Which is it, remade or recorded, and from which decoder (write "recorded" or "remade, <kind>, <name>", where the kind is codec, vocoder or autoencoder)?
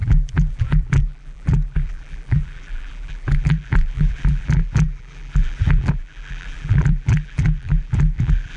remade, vocoder, BigVGAN v2